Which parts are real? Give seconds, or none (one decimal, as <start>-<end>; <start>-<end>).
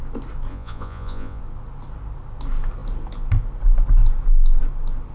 0.0-0.5; 1.4-5.1